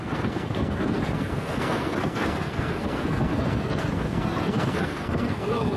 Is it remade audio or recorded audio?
remade